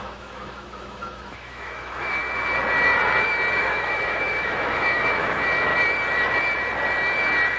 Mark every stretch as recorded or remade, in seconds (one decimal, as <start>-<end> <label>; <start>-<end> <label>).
0.0-2.2 remade; 2.2-3.6 recorded; 3.6-5.7 remade; 5.7-7.6 recorded